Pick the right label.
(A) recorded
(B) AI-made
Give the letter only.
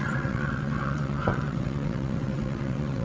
B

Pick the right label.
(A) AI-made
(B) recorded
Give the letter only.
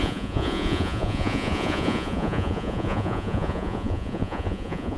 A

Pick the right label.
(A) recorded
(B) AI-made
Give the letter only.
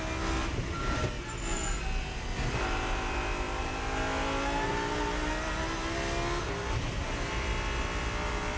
A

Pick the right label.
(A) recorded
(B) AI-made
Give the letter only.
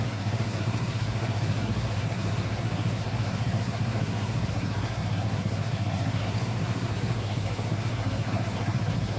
B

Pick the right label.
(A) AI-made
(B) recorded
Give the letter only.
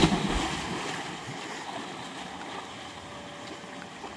B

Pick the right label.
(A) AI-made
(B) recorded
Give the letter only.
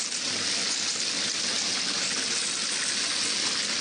B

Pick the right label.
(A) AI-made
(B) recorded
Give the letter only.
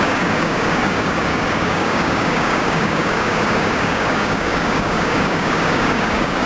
A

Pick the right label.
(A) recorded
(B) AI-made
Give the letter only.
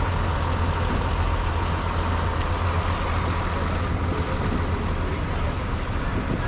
A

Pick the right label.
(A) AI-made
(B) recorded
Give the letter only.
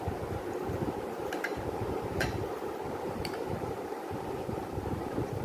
A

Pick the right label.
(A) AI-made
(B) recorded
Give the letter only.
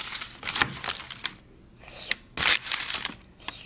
B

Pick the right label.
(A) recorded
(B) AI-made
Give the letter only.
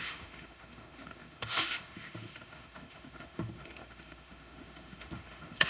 B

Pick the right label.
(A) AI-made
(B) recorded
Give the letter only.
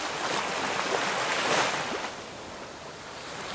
B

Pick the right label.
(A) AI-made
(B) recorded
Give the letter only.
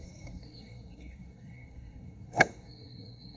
A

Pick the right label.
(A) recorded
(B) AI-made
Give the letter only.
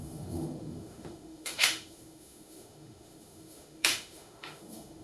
B